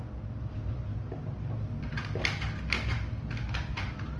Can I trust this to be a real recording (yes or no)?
yes